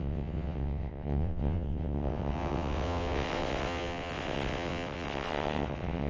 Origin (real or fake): fake